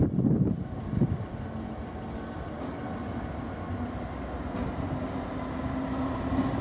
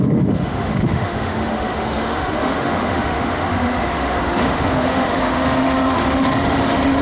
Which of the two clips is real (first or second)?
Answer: first